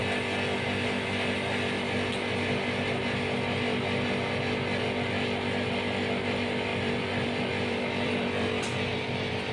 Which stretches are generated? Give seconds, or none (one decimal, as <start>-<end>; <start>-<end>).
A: 6.7-9.5